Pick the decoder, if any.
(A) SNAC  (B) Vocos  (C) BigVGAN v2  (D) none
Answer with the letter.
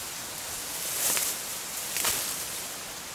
D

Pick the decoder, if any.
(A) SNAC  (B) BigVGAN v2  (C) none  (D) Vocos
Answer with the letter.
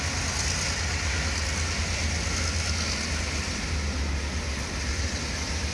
C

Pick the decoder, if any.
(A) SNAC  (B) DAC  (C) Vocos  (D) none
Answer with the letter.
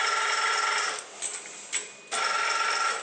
D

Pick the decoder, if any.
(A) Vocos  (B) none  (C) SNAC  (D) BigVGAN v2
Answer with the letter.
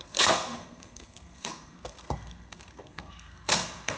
C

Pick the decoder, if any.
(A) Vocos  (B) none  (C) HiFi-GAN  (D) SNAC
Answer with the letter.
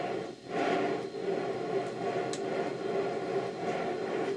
B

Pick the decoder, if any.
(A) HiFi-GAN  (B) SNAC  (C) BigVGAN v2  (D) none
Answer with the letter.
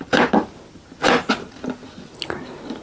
D